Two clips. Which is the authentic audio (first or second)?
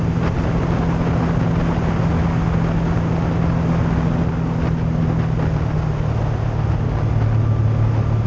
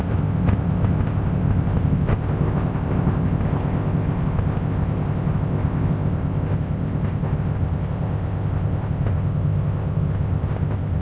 first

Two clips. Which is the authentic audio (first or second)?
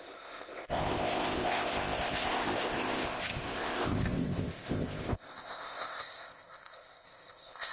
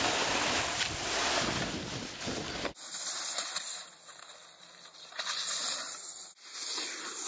second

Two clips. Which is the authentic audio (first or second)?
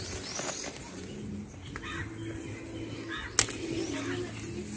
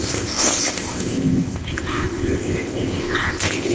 first